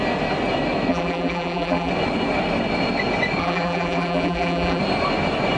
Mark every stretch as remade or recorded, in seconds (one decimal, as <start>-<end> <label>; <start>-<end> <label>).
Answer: 0.0-0.9 recorded; 0.9-1.9 remade; 1.9-3.4 recorded; 3.4-4.8 remade; 4.8-5.6 recorded

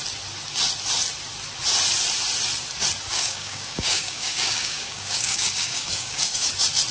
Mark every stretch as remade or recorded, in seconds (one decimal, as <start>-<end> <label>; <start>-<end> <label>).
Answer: 0.0-3.1 recorded; 3.1-6.5 remade; 6.5-6.9 recorded

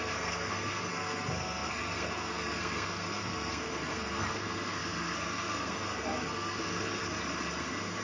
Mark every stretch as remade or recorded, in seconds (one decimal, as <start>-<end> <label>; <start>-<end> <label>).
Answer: 0.0-7.0 remade; 7.0-7.6 recorded; 7.6-8.0 remade